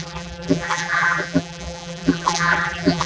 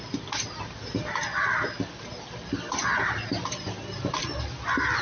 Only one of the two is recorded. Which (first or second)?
second